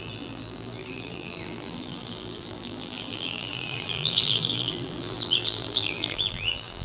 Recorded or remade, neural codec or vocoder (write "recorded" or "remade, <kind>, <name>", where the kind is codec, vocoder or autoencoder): remade, vocoder, BigVGAN v2